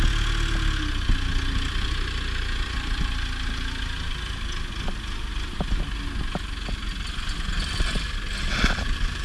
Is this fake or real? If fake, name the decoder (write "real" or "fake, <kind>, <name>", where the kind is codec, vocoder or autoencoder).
real